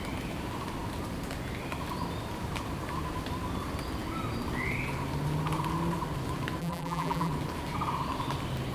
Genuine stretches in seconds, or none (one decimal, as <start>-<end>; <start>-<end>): 0.0-6.6; 7.3-8.7